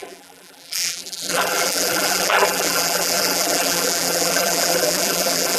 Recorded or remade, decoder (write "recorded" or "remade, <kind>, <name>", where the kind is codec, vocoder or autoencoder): remade, vocoder, BigVGAN v2